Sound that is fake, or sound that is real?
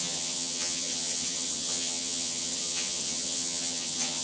fake